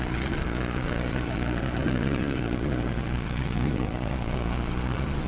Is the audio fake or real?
fake